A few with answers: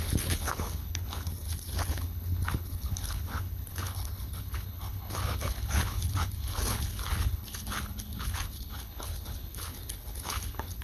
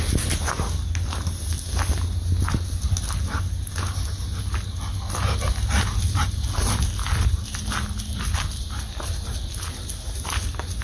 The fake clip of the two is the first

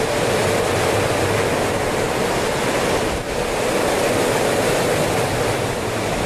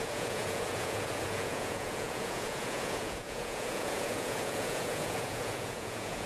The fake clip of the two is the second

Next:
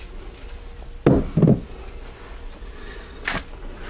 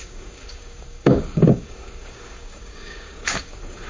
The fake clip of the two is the second